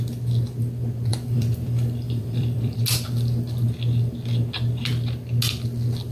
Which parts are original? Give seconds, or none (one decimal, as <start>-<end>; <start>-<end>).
0.0-1.1; 2.8-6.1